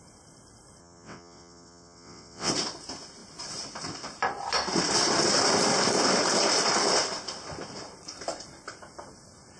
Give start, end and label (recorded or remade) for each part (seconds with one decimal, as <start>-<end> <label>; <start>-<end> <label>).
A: 0.0-0.8 recorded; 0.8-2.5 remade; 2.5-9.6 recorded